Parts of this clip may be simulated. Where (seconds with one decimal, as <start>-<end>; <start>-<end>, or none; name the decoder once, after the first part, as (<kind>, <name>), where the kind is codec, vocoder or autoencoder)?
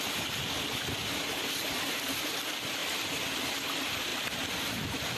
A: none